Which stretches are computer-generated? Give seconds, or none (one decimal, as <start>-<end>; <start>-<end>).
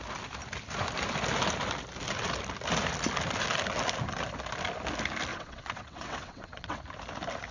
5.3-6.8